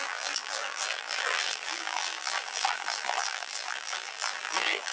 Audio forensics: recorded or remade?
remade